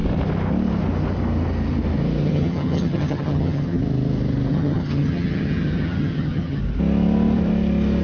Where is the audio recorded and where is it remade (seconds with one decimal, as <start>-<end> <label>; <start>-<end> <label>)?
0.0-2.2 recorded; 2.2-3.8 remade; 3.8-4.5 recorded; 4.5-6.6 remade; 6.6-8.0 recorded